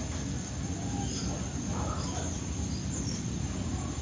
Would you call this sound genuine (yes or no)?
yes